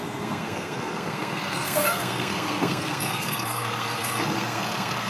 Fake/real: fake